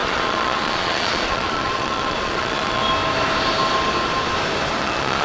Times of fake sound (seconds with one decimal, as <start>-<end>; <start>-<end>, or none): 0.0-2.8; 4.8-5.2